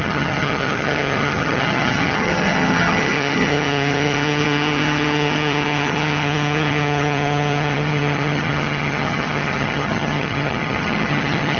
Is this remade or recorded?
remade